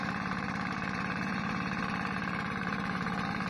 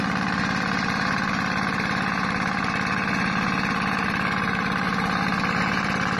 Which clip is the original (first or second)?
second